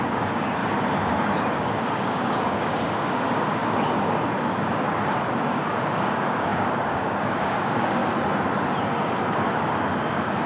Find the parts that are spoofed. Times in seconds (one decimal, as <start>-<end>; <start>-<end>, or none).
0.0-0.6; 1.5-3.6; 5.2-8.0; 10.1-10.5